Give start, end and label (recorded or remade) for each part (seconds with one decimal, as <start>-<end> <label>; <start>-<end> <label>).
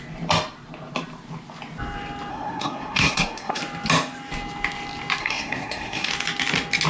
0.0-2.3 recorded; 2.3-3.6 remade; 3.6-5.2 recorded; 5.2-6.1 remade; 6.1-6.9 recorded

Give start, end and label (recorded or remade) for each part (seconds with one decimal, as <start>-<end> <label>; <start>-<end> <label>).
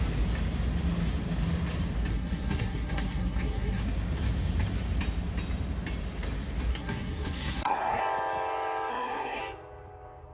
0.0-2.1 recorded; 2.1-3.8 remade; 3.8-6.7 recorded; 6.7-8.0 remade; 8.0-8.9 recorded; 8.9-9.4 remade; 9.4-10.3 recorded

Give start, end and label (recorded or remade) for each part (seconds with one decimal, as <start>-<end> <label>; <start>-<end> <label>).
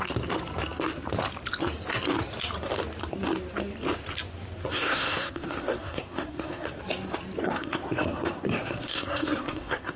0.0-4.6 recorded; 4.6-6.8 remade; 6.8-7.4 recorded; 7.4-10.0 remade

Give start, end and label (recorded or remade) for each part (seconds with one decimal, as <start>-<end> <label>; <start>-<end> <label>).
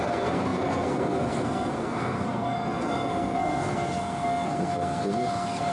0.0-5.7 remade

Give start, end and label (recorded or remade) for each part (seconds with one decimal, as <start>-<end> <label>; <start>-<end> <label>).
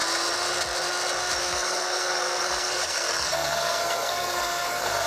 0.0-1.4 recorded; 1.4-5.1 remade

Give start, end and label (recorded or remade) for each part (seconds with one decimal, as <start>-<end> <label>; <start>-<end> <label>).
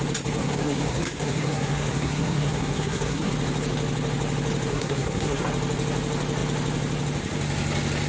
0.0-0.4 recorded; 0.4-3.3 remade; 3.3-4.7 recorded; 4.7-5.4 remade; 5.4-8.1 recorded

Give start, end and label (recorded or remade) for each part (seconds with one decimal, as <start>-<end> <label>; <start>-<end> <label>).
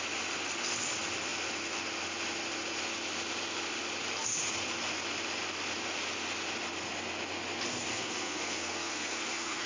0.0-7.9 recorded; 7.9-9.7 remade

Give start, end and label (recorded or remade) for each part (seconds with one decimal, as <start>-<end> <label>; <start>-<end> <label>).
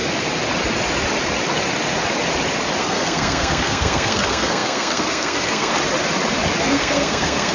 0.0-2.8 recorded; 2.8-5.7 remade; 5.7-6.6 recorded; 6.6-7.5 remade